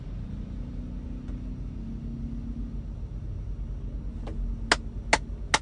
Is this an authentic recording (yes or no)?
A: yes